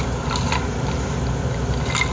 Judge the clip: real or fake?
real